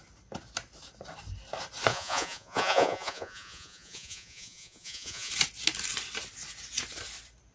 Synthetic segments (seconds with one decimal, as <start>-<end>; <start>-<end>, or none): 1.9-5.3